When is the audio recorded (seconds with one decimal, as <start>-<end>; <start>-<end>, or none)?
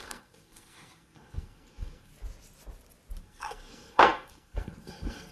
2.1-3.2